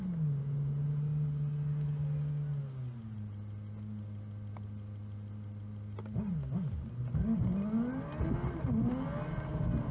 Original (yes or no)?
yes